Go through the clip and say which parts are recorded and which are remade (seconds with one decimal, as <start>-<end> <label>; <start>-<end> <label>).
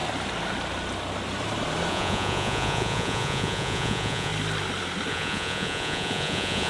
0.0-1.9 recorded; 1.9-4.3 remade; 4.3-5.1 recorded; 5.1-6.7 remade